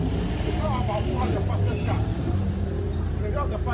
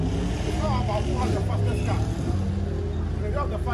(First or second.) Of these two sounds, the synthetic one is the first